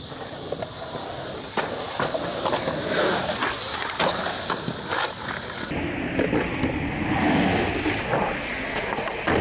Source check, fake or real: real